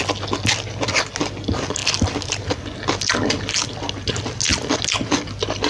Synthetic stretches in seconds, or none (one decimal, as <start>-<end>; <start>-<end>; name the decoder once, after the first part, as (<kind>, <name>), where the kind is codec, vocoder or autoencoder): none